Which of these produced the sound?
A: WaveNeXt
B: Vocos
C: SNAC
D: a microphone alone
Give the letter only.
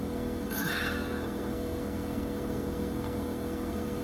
C